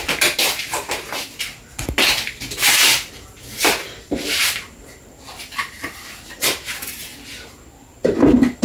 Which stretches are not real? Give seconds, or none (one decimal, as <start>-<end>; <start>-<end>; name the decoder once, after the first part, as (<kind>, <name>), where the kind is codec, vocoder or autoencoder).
none